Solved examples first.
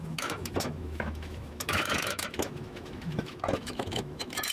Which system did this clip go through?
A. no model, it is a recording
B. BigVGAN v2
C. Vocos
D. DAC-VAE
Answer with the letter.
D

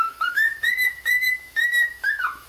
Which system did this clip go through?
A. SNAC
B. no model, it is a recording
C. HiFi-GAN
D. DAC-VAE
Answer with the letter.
D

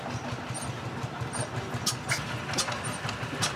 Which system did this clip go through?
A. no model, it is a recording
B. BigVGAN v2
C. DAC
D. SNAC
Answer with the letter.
A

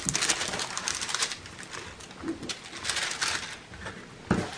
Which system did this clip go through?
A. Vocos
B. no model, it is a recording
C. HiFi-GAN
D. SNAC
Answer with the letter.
B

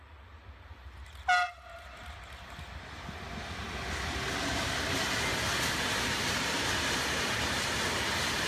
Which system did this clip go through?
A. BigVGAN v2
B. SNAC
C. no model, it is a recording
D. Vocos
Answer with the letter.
C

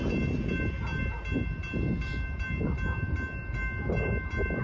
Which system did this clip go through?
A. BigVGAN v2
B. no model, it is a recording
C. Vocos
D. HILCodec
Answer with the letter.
B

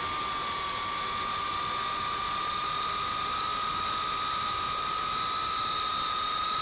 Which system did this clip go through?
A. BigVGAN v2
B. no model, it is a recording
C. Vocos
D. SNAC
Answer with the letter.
B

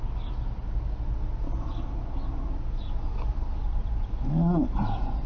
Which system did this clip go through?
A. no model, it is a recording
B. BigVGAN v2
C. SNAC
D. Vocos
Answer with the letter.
A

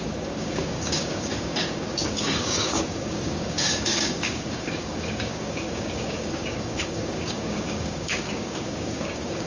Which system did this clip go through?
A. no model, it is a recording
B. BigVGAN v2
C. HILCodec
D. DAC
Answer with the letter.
D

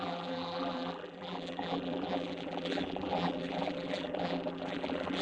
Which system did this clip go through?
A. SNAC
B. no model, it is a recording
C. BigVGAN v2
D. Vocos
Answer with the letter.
C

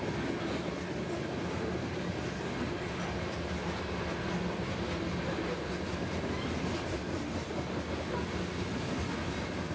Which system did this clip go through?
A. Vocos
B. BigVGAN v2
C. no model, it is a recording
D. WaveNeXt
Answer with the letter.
C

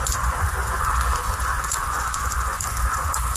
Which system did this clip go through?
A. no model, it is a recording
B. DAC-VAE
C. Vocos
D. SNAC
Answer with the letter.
C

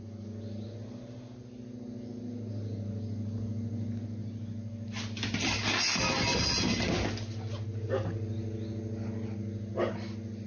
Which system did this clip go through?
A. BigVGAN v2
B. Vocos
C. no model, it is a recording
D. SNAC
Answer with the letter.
C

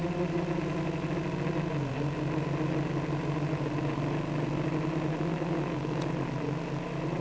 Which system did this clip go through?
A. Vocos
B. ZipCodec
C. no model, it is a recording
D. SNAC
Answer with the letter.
C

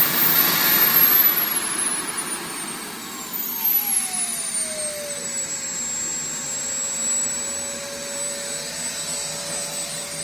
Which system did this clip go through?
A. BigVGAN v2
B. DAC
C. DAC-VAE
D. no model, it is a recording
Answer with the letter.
D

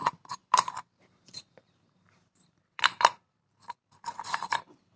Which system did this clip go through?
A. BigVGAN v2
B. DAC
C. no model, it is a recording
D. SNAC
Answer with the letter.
A